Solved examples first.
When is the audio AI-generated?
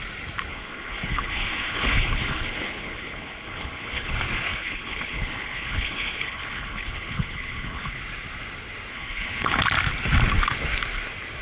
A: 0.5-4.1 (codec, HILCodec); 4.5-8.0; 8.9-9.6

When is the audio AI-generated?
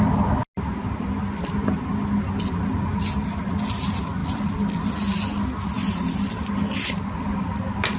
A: 4.2-4.9 (vocoder, BigVGAN v2)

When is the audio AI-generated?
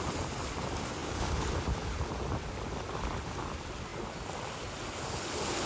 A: none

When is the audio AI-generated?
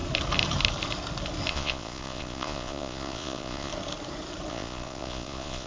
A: 1.5-3.7 (vocoder, Vocos); 4.5-5.7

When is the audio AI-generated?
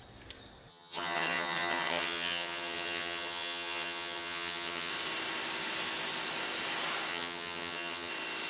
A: 0.7-4.9 (vocoder, HiFi-GAN); 7.1-8.1